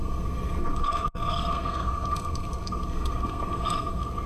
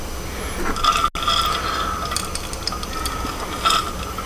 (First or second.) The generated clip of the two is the first